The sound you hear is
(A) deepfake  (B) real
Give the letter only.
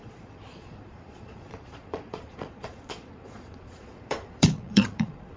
A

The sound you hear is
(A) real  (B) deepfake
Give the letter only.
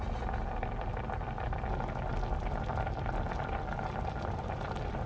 A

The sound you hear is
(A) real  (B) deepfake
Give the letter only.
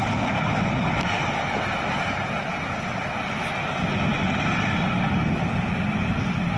A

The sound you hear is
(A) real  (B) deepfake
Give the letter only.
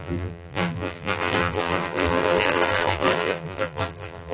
B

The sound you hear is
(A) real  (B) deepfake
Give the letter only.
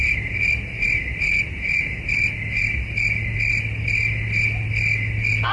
A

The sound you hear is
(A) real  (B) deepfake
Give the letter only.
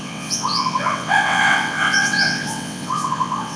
B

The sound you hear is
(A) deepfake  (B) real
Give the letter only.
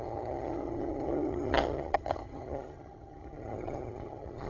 A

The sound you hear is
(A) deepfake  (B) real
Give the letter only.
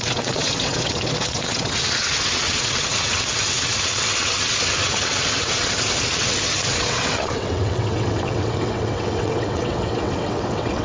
A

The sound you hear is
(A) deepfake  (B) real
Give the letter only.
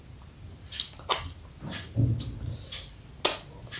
B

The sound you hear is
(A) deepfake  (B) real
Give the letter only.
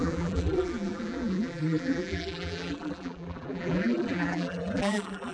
A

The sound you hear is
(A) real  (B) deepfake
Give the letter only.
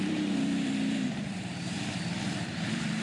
B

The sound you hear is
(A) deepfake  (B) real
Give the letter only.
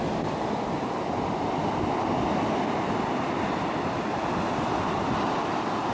B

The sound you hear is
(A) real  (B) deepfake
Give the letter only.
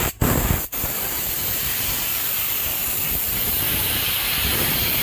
B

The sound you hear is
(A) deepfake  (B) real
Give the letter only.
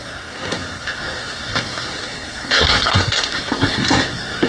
A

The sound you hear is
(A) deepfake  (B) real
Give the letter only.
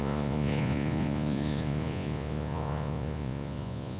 A